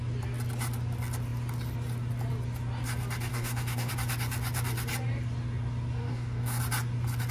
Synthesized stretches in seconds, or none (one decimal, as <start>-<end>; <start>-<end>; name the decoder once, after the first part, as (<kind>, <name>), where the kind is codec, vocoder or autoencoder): 3.3-3.9 (codec, DAC); 6.0-6.6

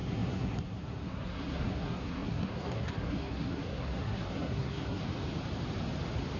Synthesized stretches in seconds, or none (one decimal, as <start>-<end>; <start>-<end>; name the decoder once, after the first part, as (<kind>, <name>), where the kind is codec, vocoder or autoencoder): 0.0-5.0 (codec, SNAC)

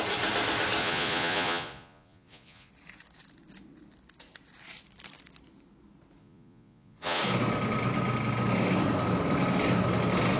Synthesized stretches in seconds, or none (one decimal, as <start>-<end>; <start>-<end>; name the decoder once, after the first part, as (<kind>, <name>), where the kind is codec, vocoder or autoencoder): 0.8-2.7 (vocoder, Vocos); 6.2-7.2